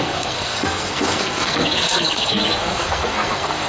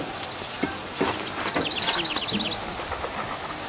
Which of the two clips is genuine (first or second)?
second